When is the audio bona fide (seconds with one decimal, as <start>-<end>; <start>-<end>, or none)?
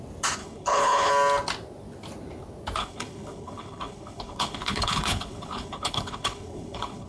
0.0-0.4; 1.1-2.8